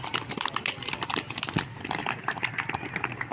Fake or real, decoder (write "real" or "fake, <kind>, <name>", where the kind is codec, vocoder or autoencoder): real